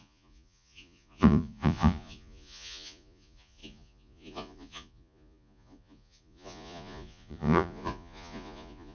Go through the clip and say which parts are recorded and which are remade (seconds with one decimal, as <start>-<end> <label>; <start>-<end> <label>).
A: 0.0-8.9 remade